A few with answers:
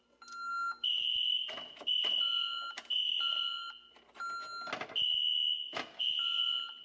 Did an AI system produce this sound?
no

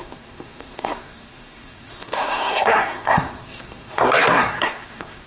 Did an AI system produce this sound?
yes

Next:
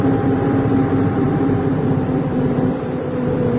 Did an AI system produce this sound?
yes